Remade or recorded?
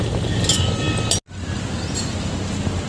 recorded